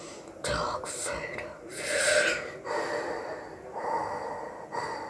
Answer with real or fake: real